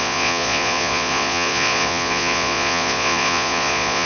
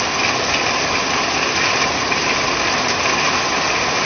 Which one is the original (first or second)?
second